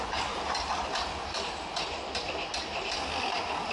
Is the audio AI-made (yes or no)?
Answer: no